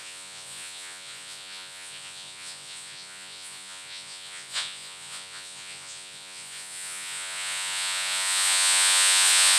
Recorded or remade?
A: remade